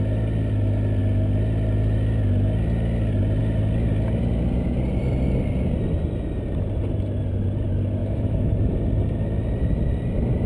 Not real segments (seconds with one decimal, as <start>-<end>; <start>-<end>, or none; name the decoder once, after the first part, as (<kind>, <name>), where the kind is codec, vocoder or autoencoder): 8.0-8.7 (autoencoder, DAC-VAE)